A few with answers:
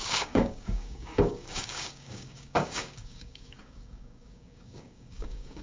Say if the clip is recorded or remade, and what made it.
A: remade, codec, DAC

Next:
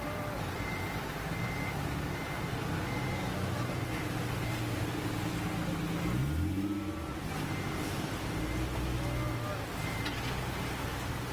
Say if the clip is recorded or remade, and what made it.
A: recorded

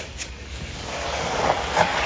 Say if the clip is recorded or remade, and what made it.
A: remade, codec, DAC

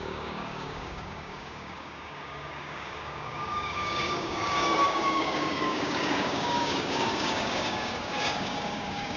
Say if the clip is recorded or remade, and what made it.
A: remade, codec, DAC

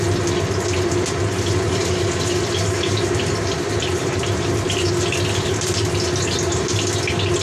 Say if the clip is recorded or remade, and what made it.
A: recorded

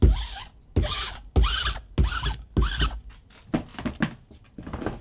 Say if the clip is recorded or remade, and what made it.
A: recorded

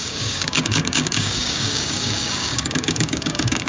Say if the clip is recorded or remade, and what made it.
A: remade, codec, DAC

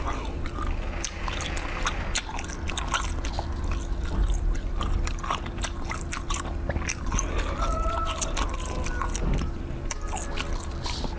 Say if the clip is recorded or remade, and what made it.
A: recorded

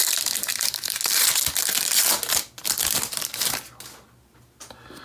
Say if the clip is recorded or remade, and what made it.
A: recorded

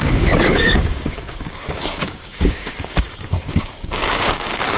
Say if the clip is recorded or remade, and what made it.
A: remade, codec, DAC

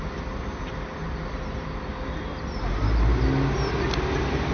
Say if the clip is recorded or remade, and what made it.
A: recorded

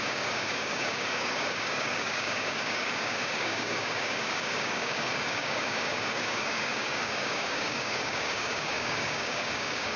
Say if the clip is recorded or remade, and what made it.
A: remade, codec, DAC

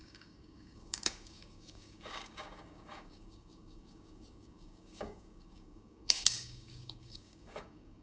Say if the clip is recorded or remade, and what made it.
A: remade, codec, DAC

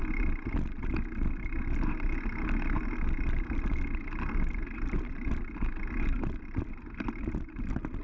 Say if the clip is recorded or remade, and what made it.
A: recorded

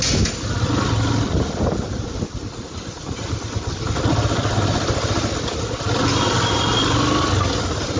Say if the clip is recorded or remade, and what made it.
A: recorded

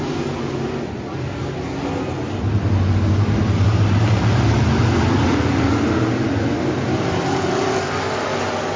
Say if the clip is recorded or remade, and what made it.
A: recorded